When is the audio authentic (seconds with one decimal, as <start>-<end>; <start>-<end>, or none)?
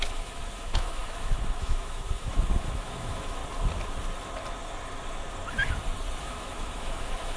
3.4-6.2